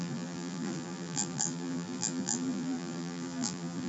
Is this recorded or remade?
remade